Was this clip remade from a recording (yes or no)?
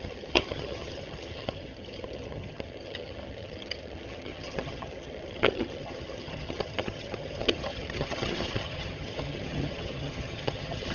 yes